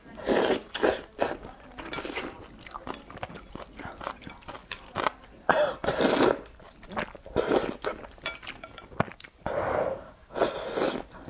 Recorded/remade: recorded